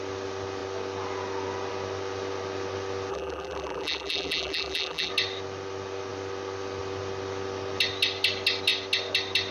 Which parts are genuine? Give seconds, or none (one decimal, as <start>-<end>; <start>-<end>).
0.0-3.1; 5.1-9.5